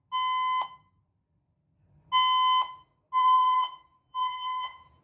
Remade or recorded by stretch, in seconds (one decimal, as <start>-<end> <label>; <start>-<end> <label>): 0.0-3.2 recorded; 3.2-5.0 remade